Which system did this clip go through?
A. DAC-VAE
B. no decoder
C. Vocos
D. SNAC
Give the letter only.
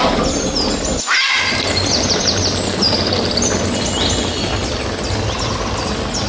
B